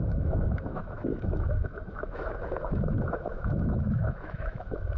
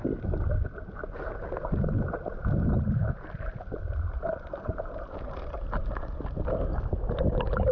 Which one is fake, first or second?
first